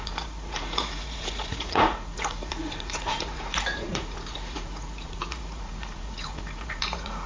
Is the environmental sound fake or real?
fake